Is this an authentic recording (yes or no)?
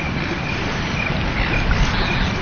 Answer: yes